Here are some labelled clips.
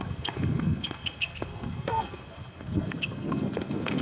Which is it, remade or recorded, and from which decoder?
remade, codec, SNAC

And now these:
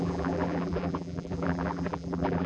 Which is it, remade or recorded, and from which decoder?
remade, vocoder, BigVGAN v2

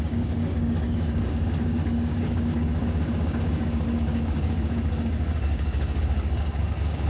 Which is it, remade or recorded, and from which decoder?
remade, codec, DAC